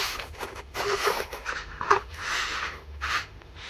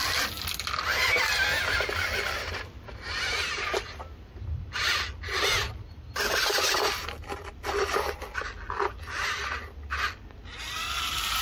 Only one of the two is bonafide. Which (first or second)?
second